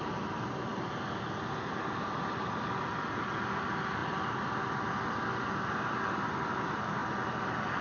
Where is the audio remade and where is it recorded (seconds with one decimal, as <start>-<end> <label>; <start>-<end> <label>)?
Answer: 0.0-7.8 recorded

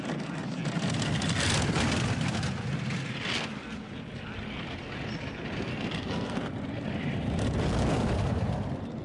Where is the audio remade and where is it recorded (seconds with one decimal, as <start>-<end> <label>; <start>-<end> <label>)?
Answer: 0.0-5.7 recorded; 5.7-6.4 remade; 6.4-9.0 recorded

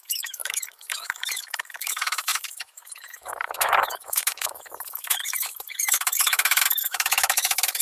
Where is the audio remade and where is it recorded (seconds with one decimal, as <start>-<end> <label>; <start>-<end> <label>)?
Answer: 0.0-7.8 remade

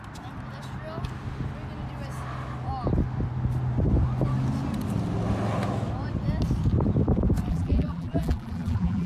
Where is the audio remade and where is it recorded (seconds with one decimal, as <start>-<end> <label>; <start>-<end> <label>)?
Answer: 0.0-7.5 recorded; 7.5-9.1 remade

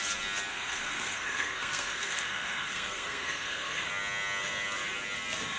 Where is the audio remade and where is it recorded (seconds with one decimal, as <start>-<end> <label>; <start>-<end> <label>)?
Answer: 0.0-0.5 recorded; 0.5-3.9 remade; 3.9-5.6 recorded

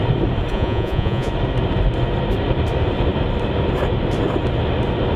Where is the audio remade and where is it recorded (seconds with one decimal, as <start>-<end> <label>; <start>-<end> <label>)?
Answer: 0.0-0.5 recorded; 0.5-1.3 remade; 1.3-5.2 recorded

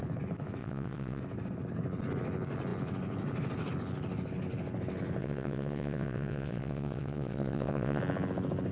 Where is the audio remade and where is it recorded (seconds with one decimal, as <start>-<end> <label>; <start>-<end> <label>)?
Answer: 0.0-0.6 recorded; 0.6-1.2 remade; 1.2-5.2 recorded; 5.2-8.0 remade; 8.0-8.7 recorded